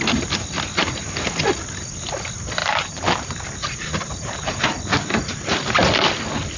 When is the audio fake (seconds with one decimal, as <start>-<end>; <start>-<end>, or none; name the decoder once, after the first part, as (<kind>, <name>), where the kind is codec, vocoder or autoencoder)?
2.6-4.6 (vocoder, BigVGAN v2)